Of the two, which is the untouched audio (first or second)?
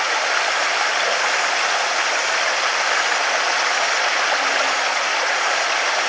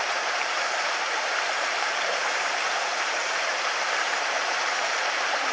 first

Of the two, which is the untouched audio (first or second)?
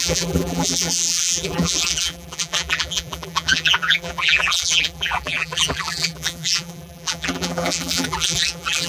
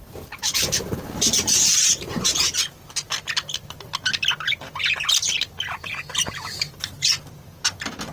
second